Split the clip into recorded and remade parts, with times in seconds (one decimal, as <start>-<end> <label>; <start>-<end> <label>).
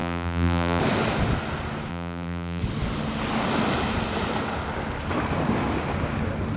0.0-0.8 remade; 0.8-1.9 recorded; 1.9-2.6 remade; 2.6-6.6 recorded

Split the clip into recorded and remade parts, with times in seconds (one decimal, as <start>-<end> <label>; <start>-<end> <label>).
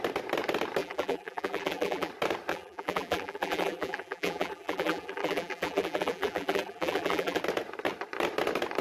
0.0-0.8 recorded; 0.8-2.1 remade; 2.1-2.5 recorded; 2.5-7.4 remade; 7.4-8.8 recorded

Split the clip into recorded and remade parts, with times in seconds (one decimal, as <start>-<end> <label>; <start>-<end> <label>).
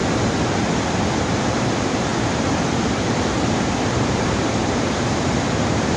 0.0-1.2 recorded; 1.2-6.0 remade